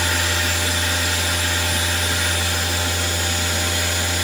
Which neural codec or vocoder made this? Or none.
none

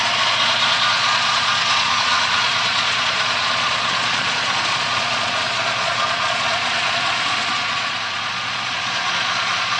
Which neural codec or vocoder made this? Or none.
vocoder, Vocos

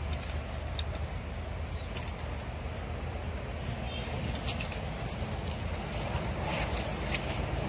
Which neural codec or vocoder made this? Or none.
none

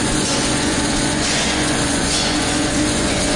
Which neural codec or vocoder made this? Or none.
vocoder, Vocos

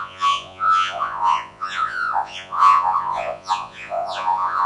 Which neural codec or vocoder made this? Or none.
vocoder, Vocos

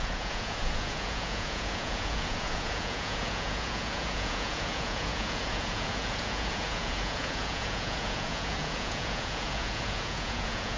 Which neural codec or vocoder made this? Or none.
vocoder, Vocos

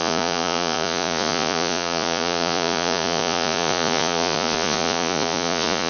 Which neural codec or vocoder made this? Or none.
vocoder, Vocos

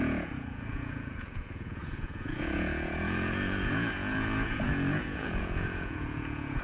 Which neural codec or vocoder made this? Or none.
vocoder, Vocos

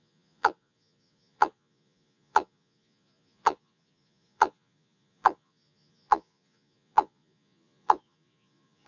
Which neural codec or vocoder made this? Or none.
vocoder, Vocos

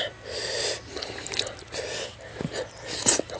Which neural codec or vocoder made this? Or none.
none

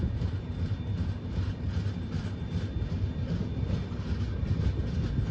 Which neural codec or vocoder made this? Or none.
none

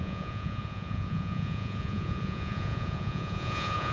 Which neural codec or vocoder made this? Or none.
vocoder, Vocos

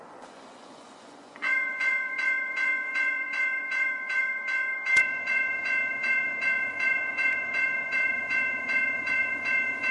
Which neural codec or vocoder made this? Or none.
vocoder, Vocos